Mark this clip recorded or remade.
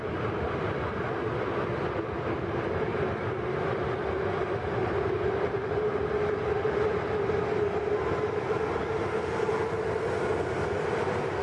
recorded